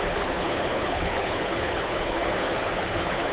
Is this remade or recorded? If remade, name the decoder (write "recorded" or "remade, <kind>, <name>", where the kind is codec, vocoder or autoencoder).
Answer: remade, codec, HILCodec